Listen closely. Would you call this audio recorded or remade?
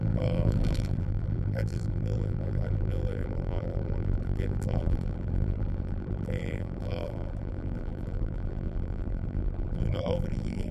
remade